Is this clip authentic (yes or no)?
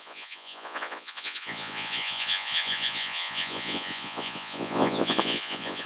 no